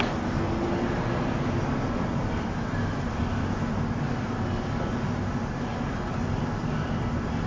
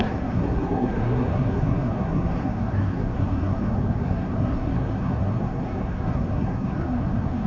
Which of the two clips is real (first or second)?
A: first